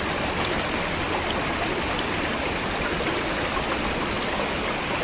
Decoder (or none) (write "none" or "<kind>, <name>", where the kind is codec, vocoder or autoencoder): none